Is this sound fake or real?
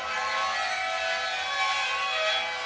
real